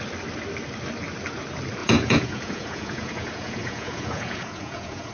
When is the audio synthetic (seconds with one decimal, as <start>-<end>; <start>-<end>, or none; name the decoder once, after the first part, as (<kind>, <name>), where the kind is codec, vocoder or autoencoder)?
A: 1.8-5.1 (vocoder, Vocos)